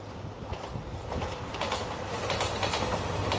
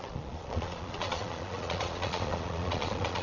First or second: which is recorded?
first